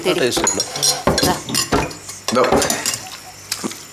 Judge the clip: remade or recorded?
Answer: recorded